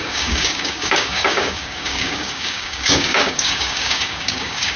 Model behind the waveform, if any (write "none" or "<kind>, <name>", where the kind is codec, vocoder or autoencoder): codec, DAC